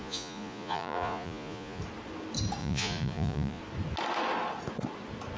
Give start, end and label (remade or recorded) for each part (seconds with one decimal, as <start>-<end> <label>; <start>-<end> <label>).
0.0-1.8 remade; 1.8-2.6 recorded; 2.6-3.6 remade; 3.6-5.4 recorded